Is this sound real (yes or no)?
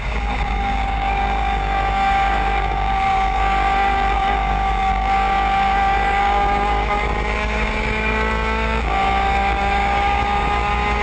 no